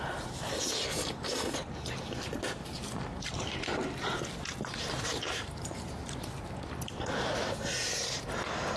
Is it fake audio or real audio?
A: fake